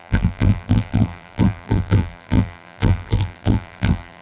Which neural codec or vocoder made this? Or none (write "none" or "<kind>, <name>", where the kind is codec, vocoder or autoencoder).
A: vocoder, BigVGAN v2